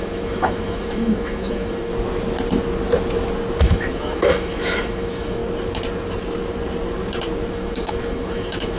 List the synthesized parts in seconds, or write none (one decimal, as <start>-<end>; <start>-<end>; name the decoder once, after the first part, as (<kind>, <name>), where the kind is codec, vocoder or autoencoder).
0.0-1.9 (autoencoder, DAC-VAE); 3.6-5.4; 7.5-8.8